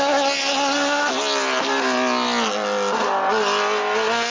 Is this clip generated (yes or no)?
no